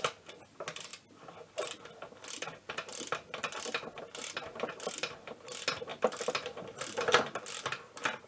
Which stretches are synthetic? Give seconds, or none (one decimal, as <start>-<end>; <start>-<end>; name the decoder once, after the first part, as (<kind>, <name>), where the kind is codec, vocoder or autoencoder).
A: none